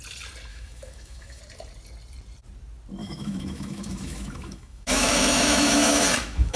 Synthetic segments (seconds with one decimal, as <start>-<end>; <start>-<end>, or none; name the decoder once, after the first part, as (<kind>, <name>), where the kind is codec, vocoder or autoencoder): 0.5-1.4 (autoencoder, DAC-VAE); 3.0-6.6